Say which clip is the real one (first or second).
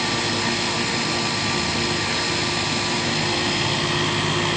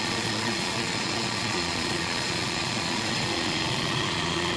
first